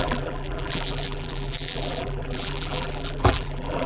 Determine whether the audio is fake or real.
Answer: fake